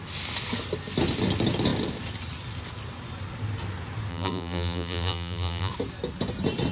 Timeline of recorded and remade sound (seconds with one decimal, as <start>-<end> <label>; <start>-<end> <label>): 0.0-4.1 recorded; 4.1-5.7 remade; 5.7-6.7 recorded